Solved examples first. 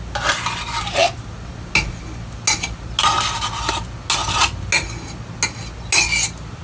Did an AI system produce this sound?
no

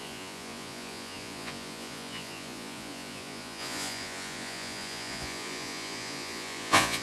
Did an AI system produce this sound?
yes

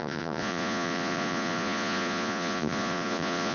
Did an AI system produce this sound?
yes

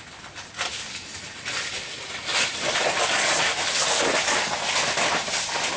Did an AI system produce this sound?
no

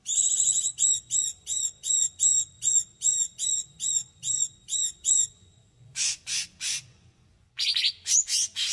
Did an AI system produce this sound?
yes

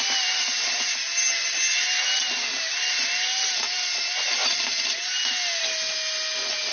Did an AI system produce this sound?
no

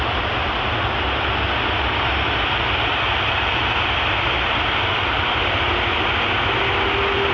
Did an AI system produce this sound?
no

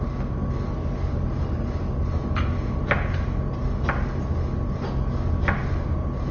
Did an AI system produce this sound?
no